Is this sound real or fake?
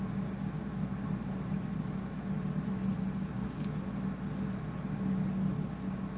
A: real